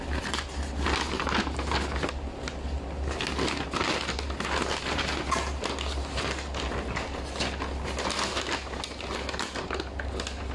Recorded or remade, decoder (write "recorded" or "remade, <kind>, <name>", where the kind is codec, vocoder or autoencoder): recorded